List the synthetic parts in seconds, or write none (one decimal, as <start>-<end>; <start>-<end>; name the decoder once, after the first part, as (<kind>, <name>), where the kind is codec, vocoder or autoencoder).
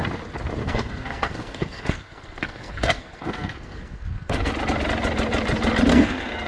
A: 0.6-4.5 (codec, SNAC); 5.9-6.5